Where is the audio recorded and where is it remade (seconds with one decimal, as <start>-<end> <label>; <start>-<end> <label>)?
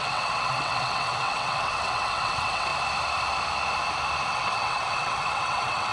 0.0-2.7 remade; 2.7-4.3 recorded; 4.3-5.9 remade